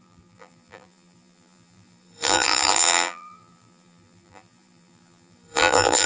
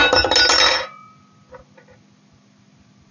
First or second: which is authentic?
second